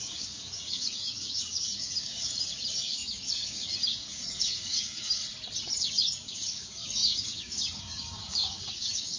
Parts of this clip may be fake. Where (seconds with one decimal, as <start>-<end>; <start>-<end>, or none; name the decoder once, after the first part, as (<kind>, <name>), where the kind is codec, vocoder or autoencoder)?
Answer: 0.0-5.2 (codec, DAC); 5.8-9.2